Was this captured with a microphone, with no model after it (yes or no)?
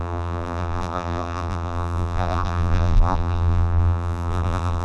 no